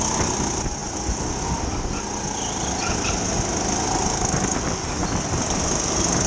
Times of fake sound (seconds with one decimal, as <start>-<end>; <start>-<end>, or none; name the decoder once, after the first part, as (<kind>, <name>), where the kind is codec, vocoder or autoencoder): none